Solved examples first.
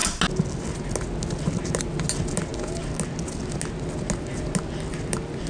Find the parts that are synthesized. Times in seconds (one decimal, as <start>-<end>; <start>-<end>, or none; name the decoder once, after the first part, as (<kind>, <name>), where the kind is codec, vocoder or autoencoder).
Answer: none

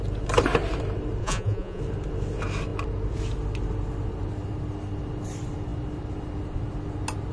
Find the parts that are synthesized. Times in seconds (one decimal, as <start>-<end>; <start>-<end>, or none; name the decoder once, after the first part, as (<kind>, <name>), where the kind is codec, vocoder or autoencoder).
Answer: 1.2-1.8 (vocoder, Vocos)

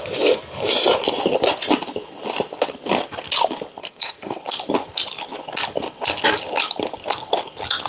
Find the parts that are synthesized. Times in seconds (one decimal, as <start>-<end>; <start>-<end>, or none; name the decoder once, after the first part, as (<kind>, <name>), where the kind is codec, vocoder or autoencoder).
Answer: 3.8-4.4 (codec, SNAC)